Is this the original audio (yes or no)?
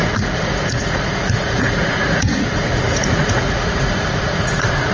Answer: no